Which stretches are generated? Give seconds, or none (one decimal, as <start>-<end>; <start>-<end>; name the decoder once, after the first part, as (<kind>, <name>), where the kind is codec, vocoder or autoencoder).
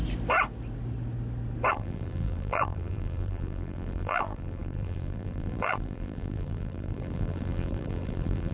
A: 1.7-8.5 (vocoder, BigVGAN v2)